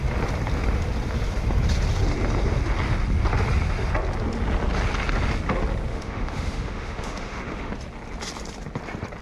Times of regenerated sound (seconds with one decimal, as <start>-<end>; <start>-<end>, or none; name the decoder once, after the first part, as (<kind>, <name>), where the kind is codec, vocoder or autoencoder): 5.9-7.7 (autoencoder, DAC-VAE)